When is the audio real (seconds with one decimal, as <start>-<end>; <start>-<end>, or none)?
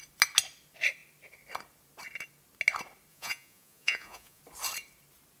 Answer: 0.0-3.1; 4.4-5.4